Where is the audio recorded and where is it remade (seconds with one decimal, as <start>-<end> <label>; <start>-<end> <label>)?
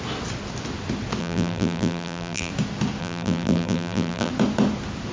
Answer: 0.0-1.2 recorded; 1.2-2.5 remade; 2.5-3.0 recorded; 3.0-4.3 remade; 4.3-5.1 recorded